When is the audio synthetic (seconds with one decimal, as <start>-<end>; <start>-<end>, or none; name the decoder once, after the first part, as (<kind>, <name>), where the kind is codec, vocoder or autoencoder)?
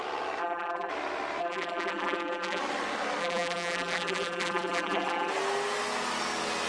0.4-0.9 (vocoder, BigVGAN v2); 1.4-2.6; 3.2-5.3